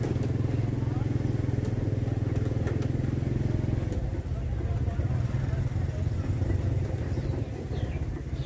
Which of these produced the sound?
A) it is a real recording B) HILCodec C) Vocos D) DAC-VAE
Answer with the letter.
A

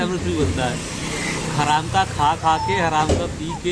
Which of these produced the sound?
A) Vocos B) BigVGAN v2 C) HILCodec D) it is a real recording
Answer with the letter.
D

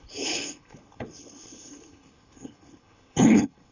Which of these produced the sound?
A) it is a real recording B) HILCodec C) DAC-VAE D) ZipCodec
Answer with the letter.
B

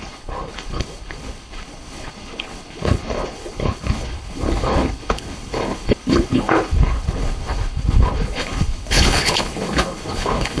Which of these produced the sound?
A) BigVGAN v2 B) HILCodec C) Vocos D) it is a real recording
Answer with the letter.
B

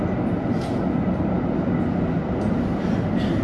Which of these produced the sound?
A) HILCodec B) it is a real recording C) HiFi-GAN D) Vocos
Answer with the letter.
B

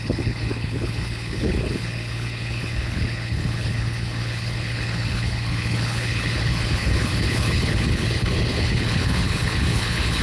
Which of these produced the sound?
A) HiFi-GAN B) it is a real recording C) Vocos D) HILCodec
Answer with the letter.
D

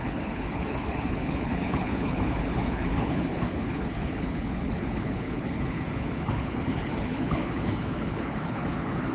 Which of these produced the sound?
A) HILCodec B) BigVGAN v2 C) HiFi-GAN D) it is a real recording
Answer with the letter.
A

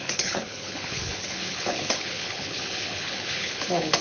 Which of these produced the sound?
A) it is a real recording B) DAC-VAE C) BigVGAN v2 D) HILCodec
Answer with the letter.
D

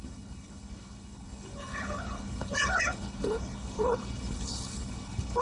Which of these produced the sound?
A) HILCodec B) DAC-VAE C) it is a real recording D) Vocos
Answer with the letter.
A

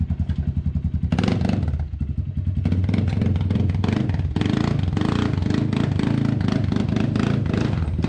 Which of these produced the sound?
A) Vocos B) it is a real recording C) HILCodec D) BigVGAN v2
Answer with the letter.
B